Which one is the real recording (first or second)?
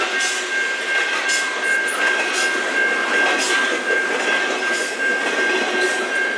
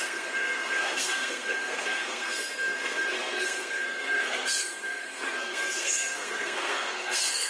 first